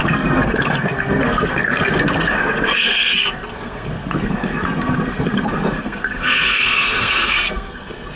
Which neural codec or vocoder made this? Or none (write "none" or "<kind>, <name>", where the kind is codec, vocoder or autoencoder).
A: codec, SNAC